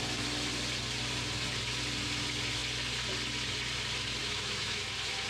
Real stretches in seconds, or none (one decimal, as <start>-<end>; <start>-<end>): 0.0-4.2; 4.8-5.3